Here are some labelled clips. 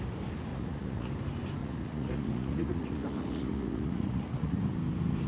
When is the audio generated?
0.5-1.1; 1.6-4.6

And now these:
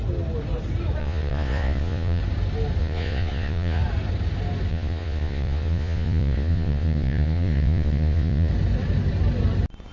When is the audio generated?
1.0-2.2; 2.8-3.8; 4.7-8.5

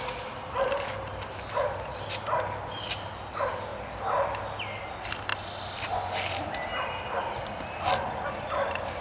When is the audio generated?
none

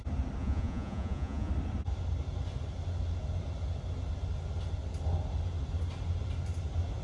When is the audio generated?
0.4-1.5

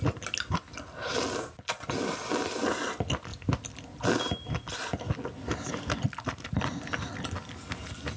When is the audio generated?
none

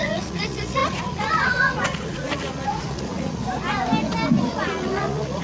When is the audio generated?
0.0-3.4; 4.3-5.4

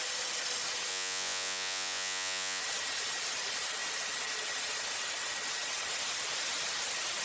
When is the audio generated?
0.9-2.6